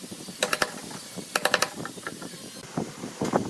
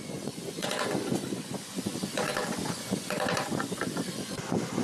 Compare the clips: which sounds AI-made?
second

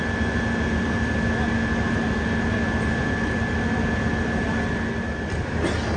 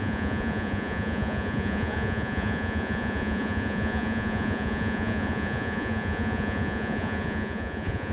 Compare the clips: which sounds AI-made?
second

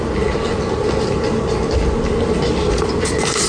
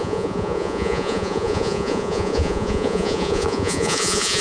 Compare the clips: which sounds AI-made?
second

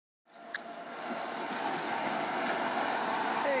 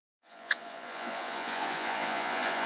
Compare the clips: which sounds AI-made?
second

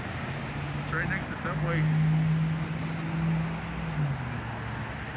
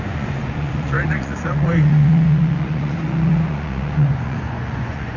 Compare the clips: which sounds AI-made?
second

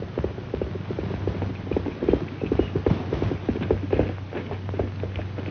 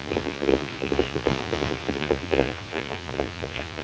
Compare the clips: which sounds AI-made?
second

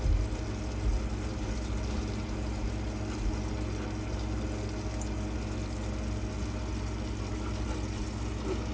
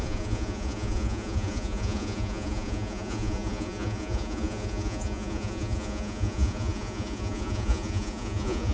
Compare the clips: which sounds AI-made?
second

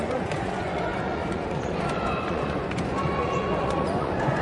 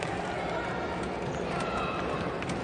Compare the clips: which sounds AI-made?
first